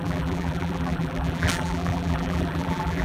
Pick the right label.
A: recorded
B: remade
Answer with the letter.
B